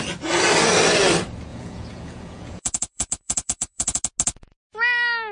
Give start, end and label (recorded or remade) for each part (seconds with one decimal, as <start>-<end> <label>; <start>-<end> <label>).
0.0-1.5 recorded; 1.5-4.0 remade; 4.0-5.3 recorded